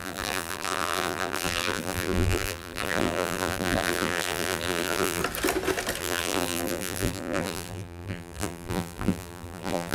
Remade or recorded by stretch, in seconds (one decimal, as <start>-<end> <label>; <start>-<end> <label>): 0.0-5.2 remade; 5.2-6.0 recorded; 6.0-9.9 remade